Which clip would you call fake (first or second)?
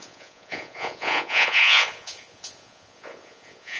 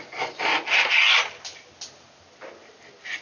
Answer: first